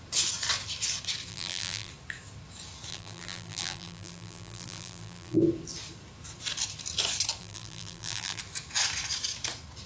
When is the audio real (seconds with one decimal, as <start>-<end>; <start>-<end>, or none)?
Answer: 0.0-1.3; 1.9-2.9; 5.4-7.4; 8.4-9.9